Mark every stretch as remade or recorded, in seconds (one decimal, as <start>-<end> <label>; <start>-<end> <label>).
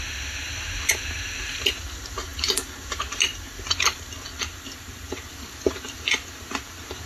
0.0-7.1 recorded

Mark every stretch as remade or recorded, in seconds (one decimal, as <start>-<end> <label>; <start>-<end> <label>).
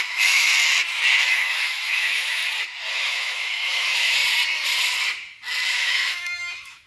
0.0-0.5 remade; 0.5-1.2 recorded; 1.2-2.4 remade; 2.4-2.9 recorded; 2.9-4.2 remade; 4.2-5.7 recorded; 5.7-6.9 remade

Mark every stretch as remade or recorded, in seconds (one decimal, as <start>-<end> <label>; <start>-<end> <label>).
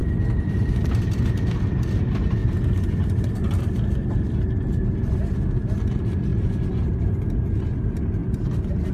0.0-8.9 recorded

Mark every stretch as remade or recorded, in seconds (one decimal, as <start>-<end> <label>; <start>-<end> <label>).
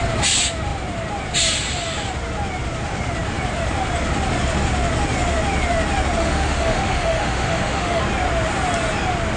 0.0-6.2 recorded; 6.2-8.0 remade; 8.0-9.4 recorded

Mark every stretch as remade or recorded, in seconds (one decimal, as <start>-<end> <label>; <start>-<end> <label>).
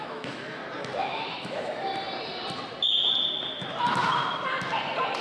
0.0-0.6 remade; 0.6-1.3 recorded; 1.3-1.9 remade; 1.9-5.2 recorded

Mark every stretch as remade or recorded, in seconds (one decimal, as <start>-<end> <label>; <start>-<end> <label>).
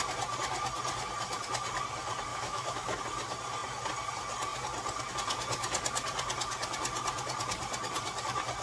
0.0-2.3 recorded; 2.3-3.0 remade; 3.0-8.6 recorded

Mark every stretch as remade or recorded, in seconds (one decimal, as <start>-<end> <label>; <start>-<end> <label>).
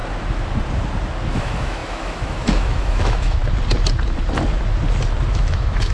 0.0-1.3 recorded; 1.3-3.4 remade; 3.4-5.3 recorded; 5.3-5.9 remade